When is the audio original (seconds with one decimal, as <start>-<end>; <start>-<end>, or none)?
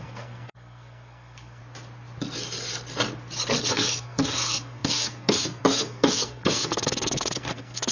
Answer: 1.6-3.7